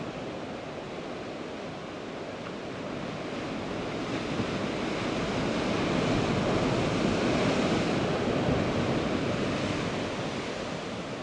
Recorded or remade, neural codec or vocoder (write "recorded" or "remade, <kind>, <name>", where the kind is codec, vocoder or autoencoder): recorded